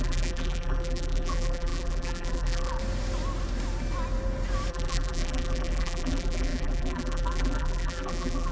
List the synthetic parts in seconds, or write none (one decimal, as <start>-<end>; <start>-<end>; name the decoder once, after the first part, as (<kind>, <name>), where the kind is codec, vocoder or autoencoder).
0.0-2.8 (vocoder, BigVGAN v2); 4.7-8.5